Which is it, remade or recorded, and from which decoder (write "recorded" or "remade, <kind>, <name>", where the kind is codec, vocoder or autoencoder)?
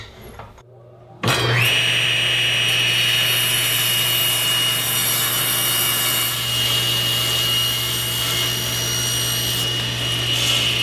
recorded